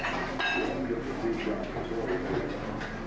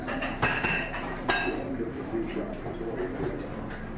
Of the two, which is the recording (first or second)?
first